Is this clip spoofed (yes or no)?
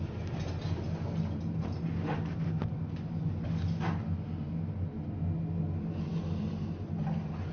no